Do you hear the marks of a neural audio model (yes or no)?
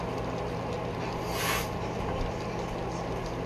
no